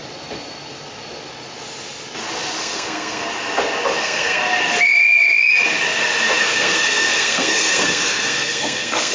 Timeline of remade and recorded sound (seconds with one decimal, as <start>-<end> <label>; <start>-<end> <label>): 0.0-2.6 recorded; 2.6-3.2 remade; 3.2-4.0 recorded; 4.0-4.4 remade; 4.4-6.4 recorded; 6.4-9.1 remade

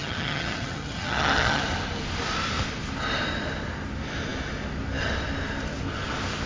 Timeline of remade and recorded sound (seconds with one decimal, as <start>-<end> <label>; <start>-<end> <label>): 0.0-1.6 remade; 1.6-6.5 recorded

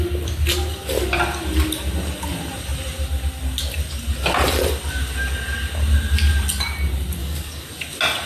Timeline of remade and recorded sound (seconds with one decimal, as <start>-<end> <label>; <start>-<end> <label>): 0.0-7.2 recorded; 7.2-7.7 remade; 7.7-8.3 recorded